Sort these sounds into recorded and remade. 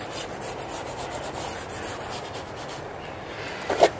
recorded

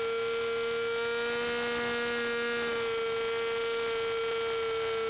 recorded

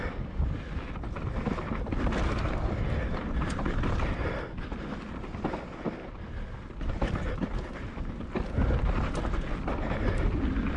recorded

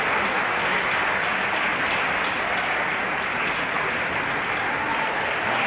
recorded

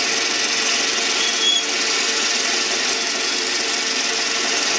recorded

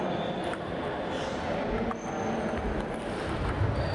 recorded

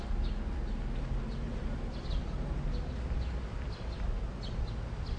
recorded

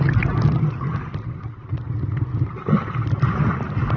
recorded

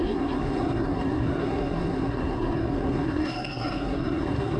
remade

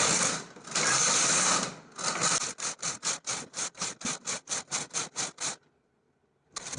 recorded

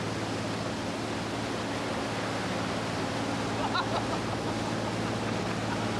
recorded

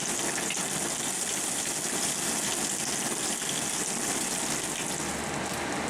recorded